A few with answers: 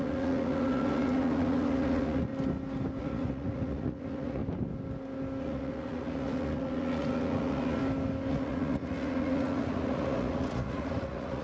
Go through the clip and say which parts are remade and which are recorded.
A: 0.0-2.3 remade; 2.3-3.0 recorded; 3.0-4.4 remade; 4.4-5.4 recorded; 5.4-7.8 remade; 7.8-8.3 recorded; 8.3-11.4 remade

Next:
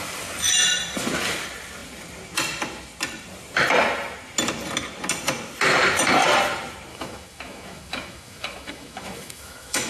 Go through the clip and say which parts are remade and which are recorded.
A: 0.0-6.9 recorded; 6.9-9.9 remade

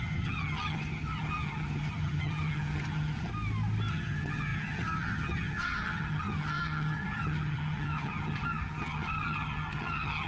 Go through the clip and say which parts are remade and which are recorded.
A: 0.0-3.3 remade; 3.3-3.9 recorded; 3.9-10.3 remade

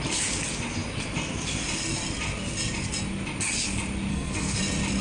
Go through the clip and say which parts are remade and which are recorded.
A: 0.0-4.1 recorded; 4.1-4.6 remade; 4.6-5.0 recorded

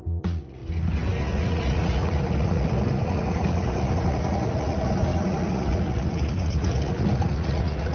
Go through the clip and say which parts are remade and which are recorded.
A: 0.0-0.6 remade; 0.6-1.2 recorded; 1.2-7.9 remade

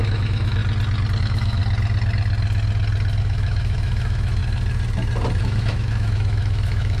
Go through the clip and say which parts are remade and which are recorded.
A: 0.0-0.6 remade; 0.6-1.2 recorded; 1.2-1.6 remade; 1.6-3.2 recorded; 3.2-4.4 remade; 4.4-5.4 recorded; 5.4-7.0 remade